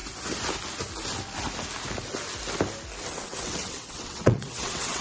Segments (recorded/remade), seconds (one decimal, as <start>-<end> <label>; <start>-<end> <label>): 0.0-3.0 recorded; 3.0-5.0 remade